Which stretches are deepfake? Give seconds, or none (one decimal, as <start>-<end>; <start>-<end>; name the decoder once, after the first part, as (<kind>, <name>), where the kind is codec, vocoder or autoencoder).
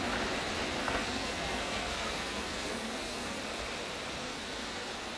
0.8-3.4 (codec, SNAC); 4.2-5.2